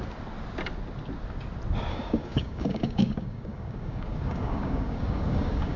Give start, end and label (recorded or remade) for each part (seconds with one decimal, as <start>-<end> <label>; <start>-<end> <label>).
0.0-1.9 recorded; 1.9-5.8 remade